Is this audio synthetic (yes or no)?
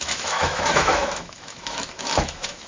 yes